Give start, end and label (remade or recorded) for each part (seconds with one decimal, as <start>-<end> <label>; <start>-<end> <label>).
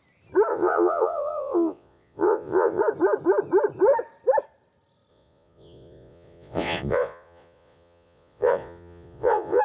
0.0-0.5 recorded; 0.5-2.8 remade; 2.8-5.1 recorded; 5.1-9.6 remade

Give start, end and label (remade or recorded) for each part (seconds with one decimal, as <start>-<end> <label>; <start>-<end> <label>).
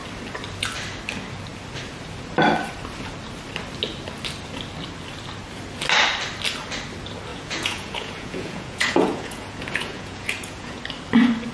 0.0-7.3 recorded; 7.3-10.8 remade; 10.8-11.5 recorded